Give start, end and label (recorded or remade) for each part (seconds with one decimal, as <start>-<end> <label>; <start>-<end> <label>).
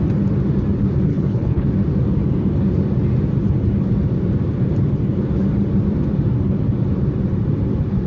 0.0-1.1 recorded; 1.1-1.7 remade; 1.7-8.1 recorded